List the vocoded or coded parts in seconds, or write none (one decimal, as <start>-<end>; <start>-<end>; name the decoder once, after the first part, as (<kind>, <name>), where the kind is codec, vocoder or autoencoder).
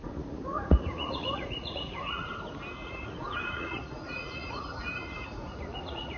0.0-2.3 (vocoder, Vocos); 2.8-6.2